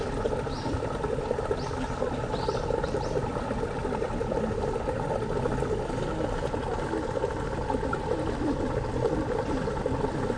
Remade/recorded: recorded